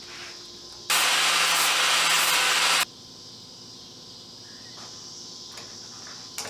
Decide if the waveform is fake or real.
real